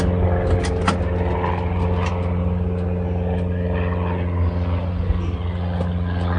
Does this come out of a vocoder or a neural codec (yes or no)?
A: no